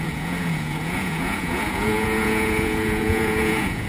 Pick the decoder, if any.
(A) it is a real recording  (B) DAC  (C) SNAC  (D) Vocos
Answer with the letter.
D